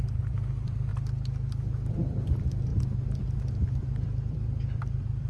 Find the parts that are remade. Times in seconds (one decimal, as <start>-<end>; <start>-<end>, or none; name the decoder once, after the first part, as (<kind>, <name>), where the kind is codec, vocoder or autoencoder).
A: 0.0-0.9 (vocoder, BigVGAN v2); 1.9-2.7; 3.7-5.3